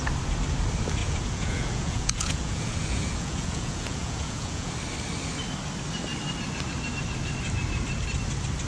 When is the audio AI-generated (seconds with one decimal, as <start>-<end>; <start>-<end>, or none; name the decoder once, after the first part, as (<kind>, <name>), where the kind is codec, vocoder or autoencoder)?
1.0-4.7 (vocoder, Vocos)